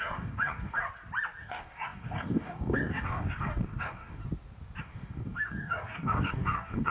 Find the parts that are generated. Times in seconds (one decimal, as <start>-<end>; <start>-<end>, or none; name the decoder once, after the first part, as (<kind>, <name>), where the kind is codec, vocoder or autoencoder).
0.0-0.8 (codec, DAC); 1.4-4.2; 4.8-6.9